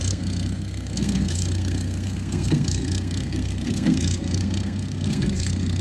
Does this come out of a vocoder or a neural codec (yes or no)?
yes